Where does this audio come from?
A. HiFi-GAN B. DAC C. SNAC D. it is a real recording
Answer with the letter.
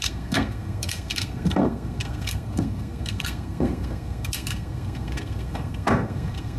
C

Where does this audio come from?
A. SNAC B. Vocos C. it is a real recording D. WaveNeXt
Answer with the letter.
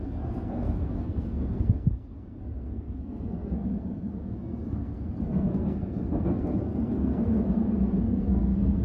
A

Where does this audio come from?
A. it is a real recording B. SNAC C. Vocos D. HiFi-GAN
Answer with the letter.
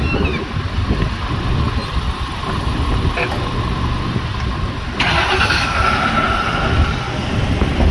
A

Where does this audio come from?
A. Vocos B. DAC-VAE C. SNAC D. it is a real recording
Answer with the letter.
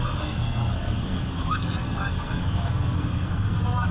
C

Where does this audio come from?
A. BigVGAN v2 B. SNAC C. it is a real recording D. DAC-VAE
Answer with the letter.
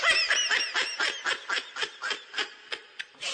C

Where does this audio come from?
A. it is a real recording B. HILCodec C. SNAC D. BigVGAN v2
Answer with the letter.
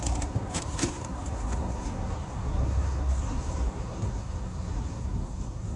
C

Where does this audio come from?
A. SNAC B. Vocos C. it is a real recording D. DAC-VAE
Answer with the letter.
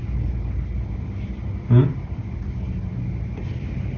C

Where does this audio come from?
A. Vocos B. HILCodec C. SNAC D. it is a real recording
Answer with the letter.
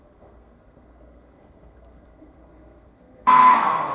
C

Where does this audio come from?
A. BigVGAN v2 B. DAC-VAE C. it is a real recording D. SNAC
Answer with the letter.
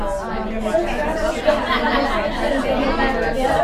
C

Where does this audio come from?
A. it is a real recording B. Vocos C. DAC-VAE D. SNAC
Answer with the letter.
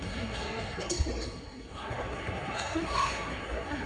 D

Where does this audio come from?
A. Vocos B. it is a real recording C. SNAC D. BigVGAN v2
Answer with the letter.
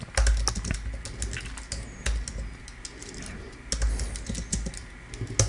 B